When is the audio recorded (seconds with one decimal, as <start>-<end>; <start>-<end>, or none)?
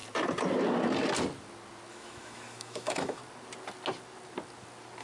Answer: 0.0-1.9; 3.2-5.0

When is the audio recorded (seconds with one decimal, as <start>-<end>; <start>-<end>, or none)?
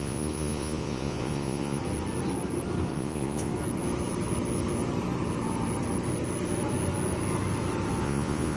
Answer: 1.8-2.9; 3.5-8.0